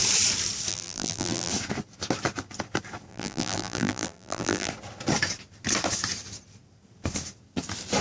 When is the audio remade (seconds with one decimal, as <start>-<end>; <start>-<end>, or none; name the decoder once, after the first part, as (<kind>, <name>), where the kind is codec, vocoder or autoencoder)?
0.7-1.5 (vocoder, BigVGAN v2); 3.1-4.7